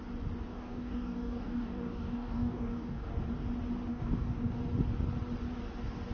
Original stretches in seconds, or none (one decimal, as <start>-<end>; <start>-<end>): 0.0-0.5; 3.1-3.9; 4.6-6.1